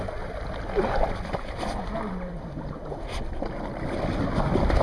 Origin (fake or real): real